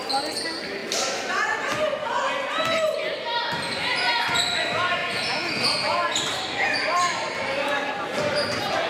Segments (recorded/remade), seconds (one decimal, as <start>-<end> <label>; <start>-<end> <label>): 0.0-8.9 recorded